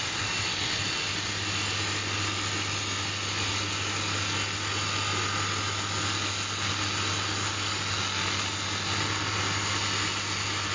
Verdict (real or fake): real